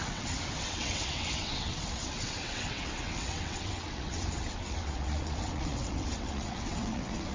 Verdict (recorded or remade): remade